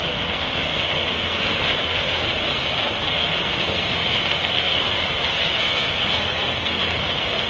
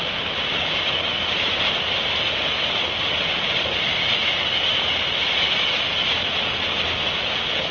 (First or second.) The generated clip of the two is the first